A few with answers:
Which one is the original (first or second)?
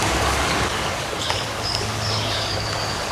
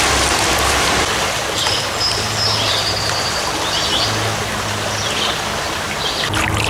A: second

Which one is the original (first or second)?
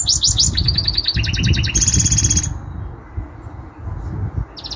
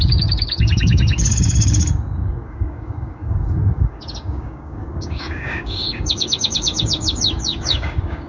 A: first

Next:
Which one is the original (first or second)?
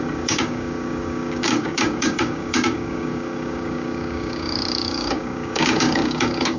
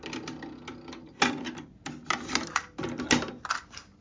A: second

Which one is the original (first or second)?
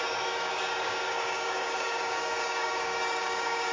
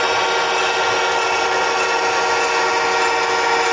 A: second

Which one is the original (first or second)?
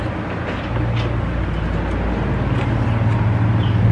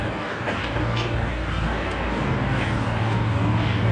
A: first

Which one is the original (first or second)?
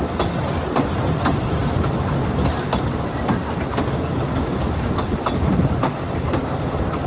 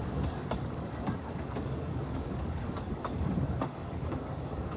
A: first